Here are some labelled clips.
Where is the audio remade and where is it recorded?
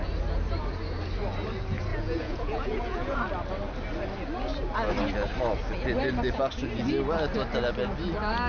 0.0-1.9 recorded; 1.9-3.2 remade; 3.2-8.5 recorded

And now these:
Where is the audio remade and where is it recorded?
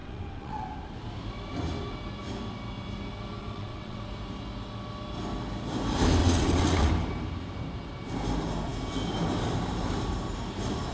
0.0-0.6 remade; 0.6-3.4 recorded; 3.4-4.0 remade; 4.0-6.2 recorded; 6.2-6.9 remade; 6.9-10.9 recorded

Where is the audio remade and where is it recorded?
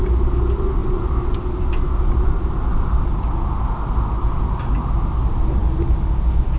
0.0-6.6 recorded